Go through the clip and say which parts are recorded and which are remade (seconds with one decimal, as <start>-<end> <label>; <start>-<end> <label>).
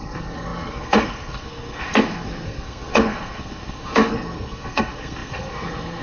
0.0-6.0 remade